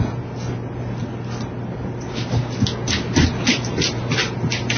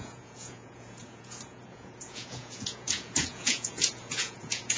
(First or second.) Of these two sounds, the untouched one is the first